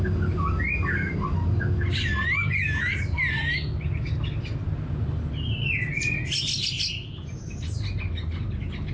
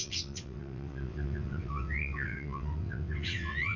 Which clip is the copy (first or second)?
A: second